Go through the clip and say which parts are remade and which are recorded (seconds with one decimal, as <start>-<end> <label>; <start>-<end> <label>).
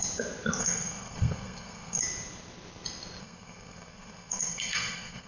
0.0-0.6 recorded; 0.6-2.0 remade; 2.0-3.2 recorded; 3.2-5.3 remade